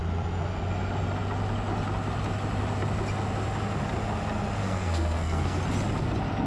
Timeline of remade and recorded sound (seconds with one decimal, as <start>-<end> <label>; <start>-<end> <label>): 0.0-4.6 recorded; 4.6-5.6 remade; 5.6-6.5 recorded